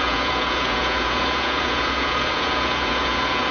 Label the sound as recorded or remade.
remade